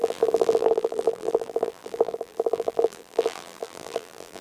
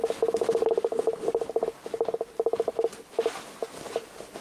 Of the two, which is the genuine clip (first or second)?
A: second